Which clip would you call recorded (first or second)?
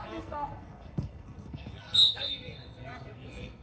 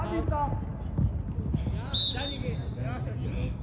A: second